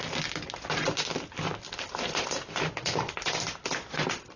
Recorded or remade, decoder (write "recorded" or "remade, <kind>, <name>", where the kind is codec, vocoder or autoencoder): recorded